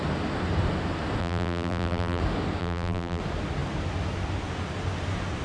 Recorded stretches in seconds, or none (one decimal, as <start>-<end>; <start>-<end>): 0.0-1.2; 2.2-2.6; 3.2-5.4